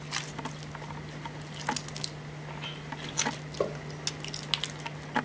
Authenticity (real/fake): real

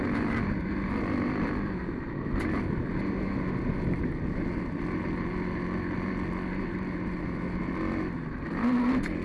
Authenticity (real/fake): real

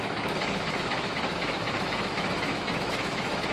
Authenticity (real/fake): fake